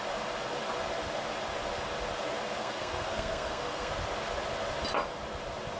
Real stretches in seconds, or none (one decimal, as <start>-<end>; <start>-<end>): 0.0-2.6; 3.9-5.8